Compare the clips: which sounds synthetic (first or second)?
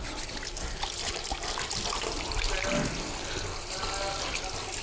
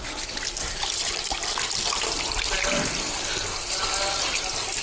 second